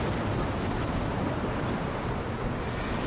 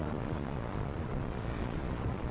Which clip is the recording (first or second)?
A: first